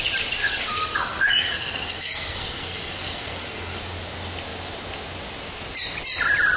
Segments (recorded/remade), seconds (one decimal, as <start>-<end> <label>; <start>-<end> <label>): 0.0-0.4 recorded; 0.4-3.8 remade; 3.8-6.6 recorded